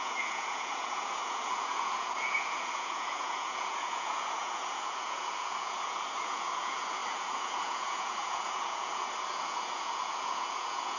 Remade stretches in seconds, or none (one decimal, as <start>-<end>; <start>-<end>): 0.0-11.0